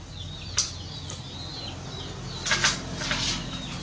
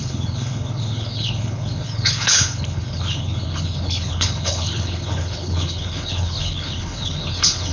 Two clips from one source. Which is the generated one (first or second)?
second